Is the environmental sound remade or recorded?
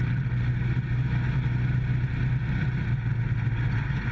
recorded